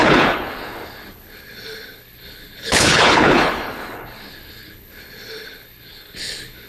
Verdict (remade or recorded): remade